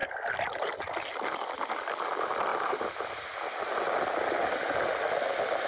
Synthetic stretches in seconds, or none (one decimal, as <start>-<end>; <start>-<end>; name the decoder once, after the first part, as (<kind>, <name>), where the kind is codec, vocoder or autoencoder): 2.5-3.0 (vocoder, BigVGAN v2)